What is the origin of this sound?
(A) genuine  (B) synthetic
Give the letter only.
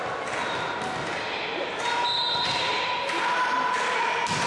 A